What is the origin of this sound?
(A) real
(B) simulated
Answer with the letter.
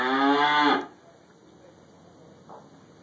A